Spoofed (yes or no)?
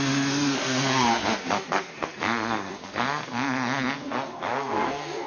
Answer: yes